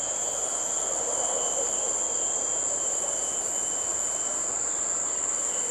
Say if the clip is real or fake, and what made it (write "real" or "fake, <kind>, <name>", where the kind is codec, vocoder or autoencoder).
real